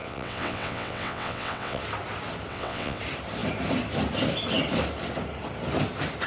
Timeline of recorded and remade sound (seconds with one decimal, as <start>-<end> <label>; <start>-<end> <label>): 0.0-1.8 remade; 1.8-2.5 recorded; 2.5-3.0 remade; 3.0-6.3 recorded